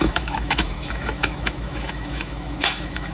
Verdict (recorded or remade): remade